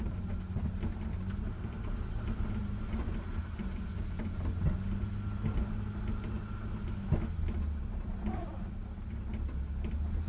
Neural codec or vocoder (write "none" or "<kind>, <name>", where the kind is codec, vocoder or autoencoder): none